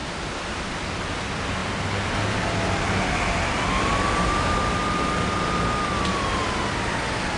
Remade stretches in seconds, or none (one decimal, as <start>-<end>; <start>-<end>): 0.7-1.6; 3.5-7.4